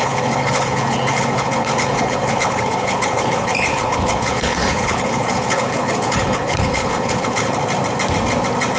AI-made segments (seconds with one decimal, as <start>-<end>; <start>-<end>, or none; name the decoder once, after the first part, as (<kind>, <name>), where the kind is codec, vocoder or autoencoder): 0.0-7.6 (codec, HILCodec)